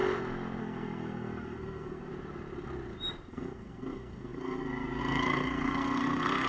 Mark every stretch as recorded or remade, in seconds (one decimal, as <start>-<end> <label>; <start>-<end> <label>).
0.0-0.6 recorded; 0.6-2.1 remade; 2.1-3.3 recorded; 3.3-6.5 remade